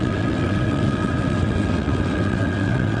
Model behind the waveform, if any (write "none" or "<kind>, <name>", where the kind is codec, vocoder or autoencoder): vocoder, WaveNeXt